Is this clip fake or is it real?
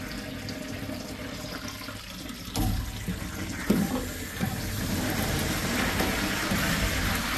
real